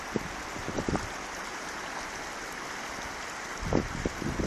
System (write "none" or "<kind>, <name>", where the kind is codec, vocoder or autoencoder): none